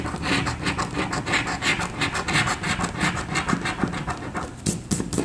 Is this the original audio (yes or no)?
yes